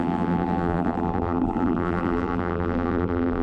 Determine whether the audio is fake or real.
fake